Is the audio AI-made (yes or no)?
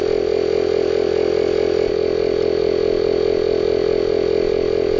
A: no